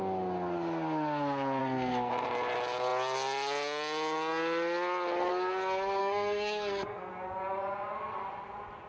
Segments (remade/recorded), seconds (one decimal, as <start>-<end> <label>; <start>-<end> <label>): 0.0-1.6 recorded; 1.6-2.1 remade; 2.1-6.0 recorded; 6.0-7.1 remade; 7.1-8.9 recorded